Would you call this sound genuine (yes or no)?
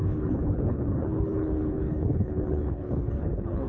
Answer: no